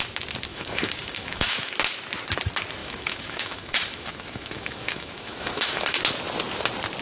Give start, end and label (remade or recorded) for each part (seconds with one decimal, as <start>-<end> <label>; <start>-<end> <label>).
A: 0.0-0.5 recorded; 0.5-1.7 remade; 1.7-2.8 recorded; 2.8-6.0 remade; 6.0-7.0 recorded